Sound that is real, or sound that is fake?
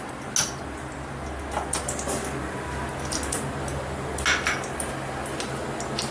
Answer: real